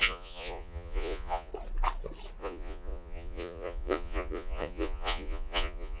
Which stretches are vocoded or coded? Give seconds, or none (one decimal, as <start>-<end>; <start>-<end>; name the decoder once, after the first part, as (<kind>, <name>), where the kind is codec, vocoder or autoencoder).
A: 0.0-1.5 (vocoder, Vocos); 2.4-6.0